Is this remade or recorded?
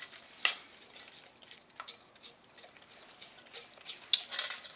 recorded